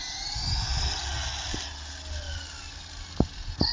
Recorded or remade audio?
recorded